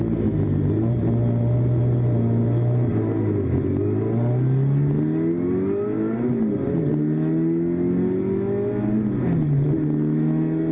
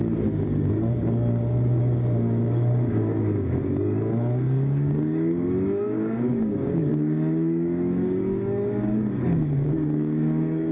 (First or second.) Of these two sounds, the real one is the first